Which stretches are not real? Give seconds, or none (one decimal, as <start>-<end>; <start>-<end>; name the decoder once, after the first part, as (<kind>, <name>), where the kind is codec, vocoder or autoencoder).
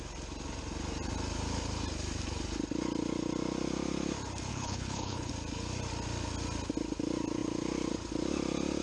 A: 4.5-5.3 (codec, HILCodec)